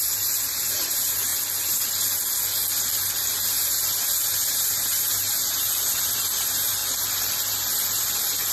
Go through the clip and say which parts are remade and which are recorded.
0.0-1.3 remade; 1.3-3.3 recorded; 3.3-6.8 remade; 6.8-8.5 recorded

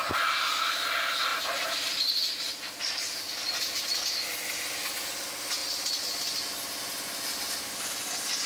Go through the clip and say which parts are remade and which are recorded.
0.0-1.3 recorded; 1.3-3.8 remade; 3.8-8.5 recorded

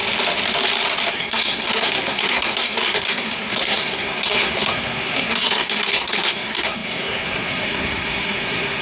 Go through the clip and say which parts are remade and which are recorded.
0.0-1.1 recorded; 1.1-8.8 remade

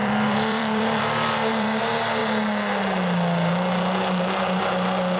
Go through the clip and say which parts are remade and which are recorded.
0.0-1.8 remade; 1.8-5.2 recorded

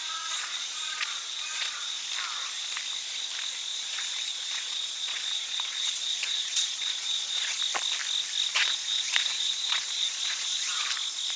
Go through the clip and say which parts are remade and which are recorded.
0.0-2.0 remade; 2.0-3.7 recorded; 3.7-7.6 remade; 7.6-8.5 recorded; 8.5-10.8 remade; 10.8-11.4 recorded